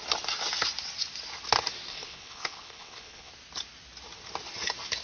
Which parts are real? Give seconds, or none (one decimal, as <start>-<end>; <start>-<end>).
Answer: 0.0-1.9; 3.3-5.0